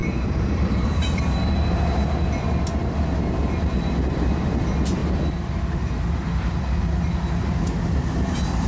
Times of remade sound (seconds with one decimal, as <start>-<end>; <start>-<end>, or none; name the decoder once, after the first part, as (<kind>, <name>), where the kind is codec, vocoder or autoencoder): 0.0-1.2 (vocoder, BigVGAN v2); 5.0-6.6; 8.0-8.7